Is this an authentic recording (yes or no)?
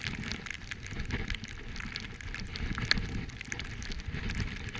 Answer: yes